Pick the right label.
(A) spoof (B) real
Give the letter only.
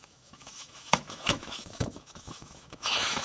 A